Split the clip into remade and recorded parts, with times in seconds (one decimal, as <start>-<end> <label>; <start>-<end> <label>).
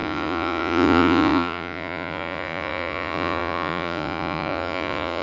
0.0-5.2 remade